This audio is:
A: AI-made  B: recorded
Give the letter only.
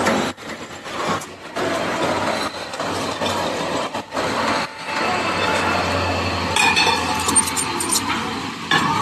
B